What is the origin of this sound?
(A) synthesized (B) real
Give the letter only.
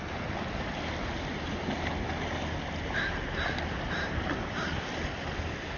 B